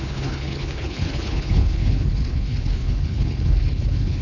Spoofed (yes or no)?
yes